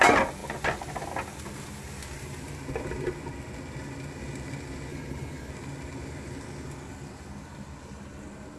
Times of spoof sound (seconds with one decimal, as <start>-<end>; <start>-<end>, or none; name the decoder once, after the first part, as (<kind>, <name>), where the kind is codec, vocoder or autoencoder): 4.9-5.5 (codec, HILCodec)